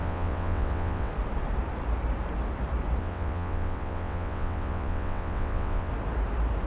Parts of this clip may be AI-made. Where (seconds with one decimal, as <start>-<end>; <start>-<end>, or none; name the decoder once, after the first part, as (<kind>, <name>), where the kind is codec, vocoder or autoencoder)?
0.0-1.1 (vocoder, WaveNeXt); 3.0-5.9